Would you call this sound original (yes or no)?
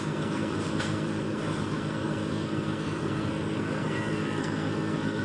no